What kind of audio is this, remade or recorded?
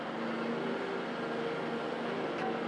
recorded